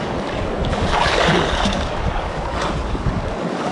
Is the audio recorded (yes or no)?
no